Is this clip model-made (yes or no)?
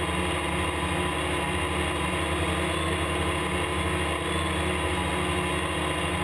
no